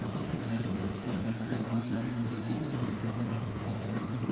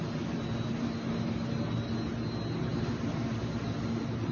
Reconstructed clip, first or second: first